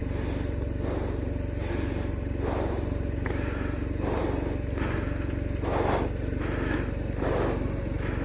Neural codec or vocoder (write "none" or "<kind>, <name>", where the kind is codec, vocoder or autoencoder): none